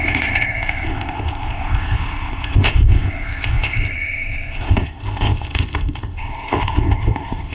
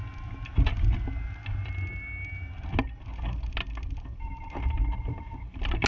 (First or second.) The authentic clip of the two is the second